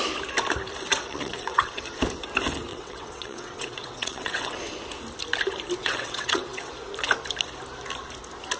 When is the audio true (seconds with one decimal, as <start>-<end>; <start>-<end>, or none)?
0.0-0.9; 1.8-2.7; 4.6-5.8; 6.7-8.6